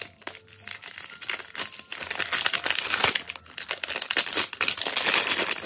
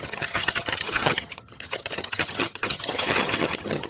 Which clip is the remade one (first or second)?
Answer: second